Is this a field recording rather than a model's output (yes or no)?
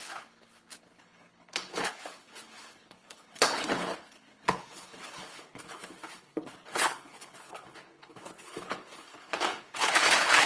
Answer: no